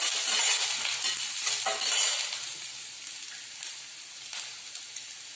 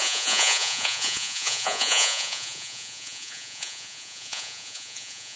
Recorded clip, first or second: first